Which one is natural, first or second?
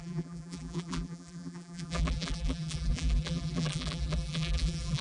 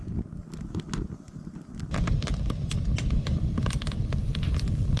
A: second